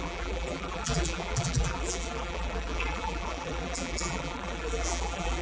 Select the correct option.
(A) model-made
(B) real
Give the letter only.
A